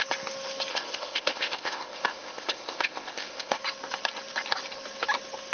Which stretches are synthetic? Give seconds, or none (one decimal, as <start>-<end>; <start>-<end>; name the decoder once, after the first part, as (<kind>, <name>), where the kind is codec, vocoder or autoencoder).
0.7-3.6 (codec, ZipCodec)